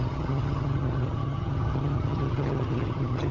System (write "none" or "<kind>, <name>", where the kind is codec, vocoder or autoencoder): vocoder, HiFi-GAN